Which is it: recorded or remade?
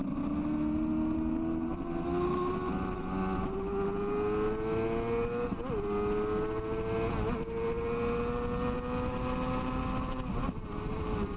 recorded